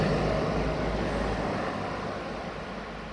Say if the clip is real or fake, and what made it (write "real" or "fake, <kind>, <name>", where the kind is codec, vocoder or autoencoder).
real